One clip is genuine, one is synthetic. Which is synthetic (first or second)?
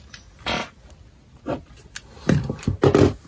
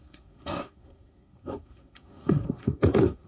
second